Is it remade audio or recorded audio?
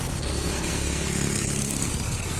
remade